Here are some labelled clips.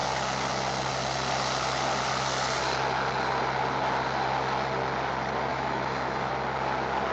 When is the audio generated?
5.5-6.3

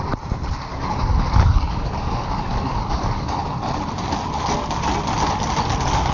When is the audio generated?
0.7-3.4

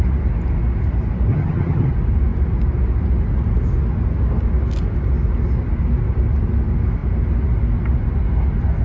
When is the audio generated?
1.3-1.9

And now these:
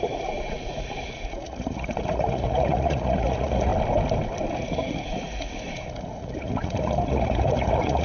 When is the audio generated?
0.0-3.7; 4.5-8.0

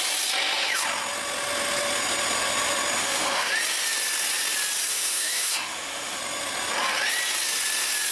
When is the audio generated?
3.0-3.5; 4.9-6.2